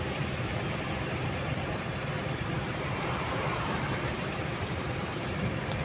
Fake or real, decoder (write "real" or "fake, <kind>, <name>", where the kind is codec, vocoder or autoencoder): fake, vocoder, BigVGAN v2